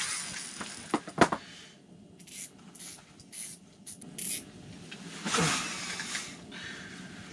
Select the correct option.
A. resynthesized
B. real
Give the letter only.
B